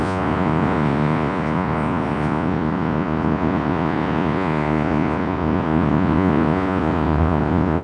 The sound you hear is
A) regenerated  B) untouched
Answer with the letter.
A